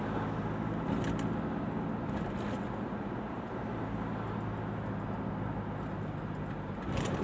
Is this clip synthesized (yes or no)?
no